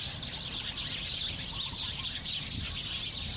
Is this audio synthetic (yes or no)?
no